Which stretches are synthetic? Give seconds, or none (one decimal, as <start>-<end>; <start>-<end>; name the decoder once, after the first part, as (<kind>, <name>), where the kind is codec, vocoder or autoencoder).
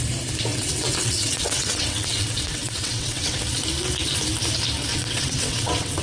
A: 0.5-3.4 (vocoder, WaveNeXt); 4.9-6.0